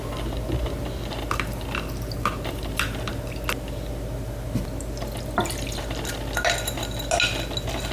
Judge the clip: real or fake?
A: real